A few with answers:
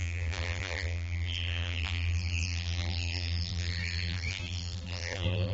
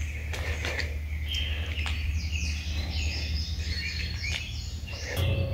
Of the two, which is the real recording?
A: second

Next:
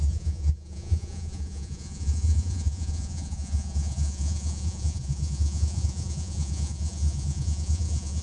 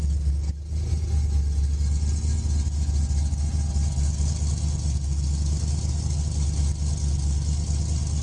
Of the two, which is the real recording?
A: second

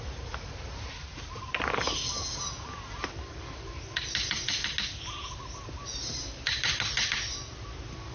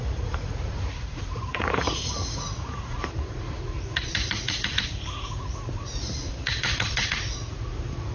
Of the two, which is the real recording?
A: first